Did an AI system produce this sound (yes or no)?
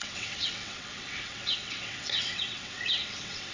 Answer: yes